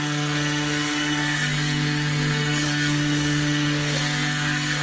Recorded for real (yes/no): no